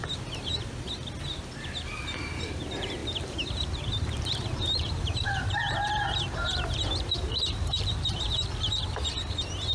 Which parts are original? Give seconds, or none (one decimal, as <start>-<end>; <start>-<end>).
0.0-2.5; 3.0-3.5